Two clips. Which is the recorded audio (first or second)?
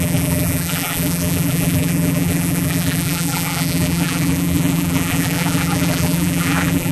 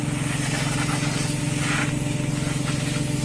second